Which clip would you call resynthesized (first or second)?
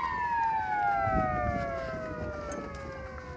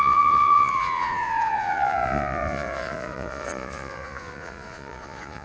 second